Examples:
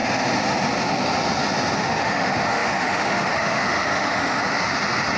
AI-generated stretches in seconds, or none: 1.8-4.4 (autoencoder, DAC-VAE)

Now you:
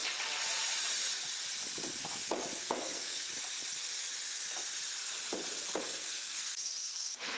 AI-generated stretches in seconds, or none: 2.6-3.3 (codec, SNAC); 5.8-7.4

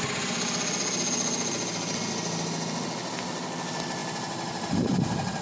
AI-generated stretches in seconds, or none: none